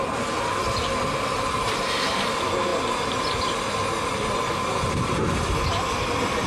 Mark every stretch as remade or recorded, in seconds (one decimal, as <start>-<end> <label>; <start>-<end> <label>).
0.0-6.5 recorded